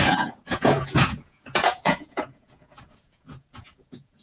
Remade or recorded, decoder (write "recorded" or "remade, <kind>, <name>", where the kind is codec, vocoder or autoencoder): remade, vocoder, Vocos